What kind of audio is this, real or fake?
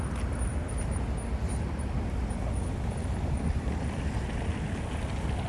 real